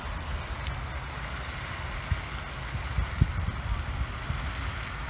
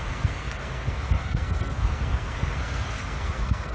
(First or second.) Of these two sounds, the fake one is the second